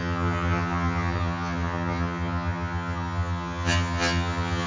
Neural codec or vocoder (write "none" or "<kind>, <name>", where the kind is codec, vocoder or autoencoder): vocoder, HiFi-GAN